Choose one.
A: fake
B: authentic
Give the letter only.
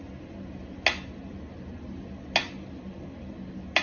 B